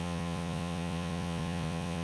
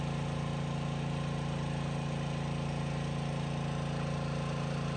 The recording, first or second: second